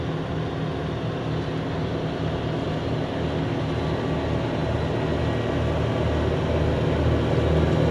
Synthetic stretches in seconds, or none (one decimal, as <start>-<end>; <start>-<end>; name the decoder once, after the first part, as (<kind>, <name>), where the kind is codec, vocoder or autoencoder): none